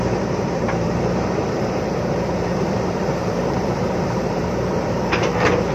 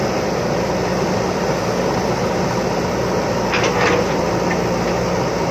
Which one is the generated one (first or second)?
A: first